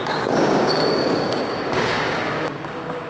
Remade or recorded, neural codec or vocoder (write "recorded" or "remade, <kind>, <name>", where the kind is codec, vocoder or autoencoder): remade, codec, DAC